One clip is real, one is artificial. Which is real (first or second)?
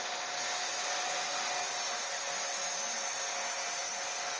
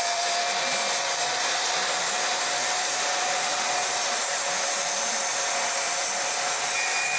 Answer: first